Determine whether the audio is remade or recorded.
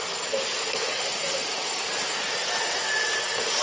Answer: recorded